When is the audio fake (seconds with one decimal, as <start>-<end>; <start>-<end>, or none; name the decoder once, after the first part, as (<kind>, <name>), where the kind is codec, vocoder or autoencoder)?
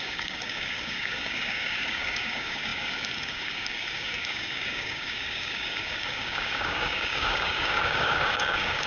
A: 0.0-8.9 (codec, DAC)